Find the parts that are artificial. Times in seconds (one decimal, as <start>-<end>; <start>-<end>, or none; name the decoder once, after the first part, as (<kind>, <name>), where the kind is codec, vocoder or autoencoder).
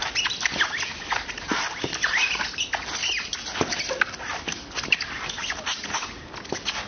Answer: none